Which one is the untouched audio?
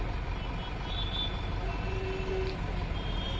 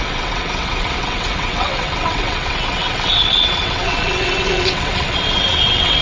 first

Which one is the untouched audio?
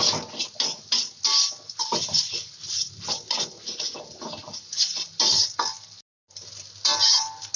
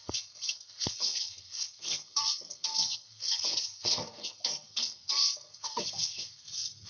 first